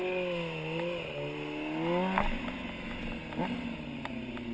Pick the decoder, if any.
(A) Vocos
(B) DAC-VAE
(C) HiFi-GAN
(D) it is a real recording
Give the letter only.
D